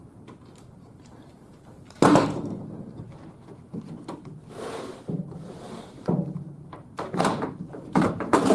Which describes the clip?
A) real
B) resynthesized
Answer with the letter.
B